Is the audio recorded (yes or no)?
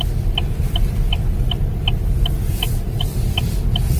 yes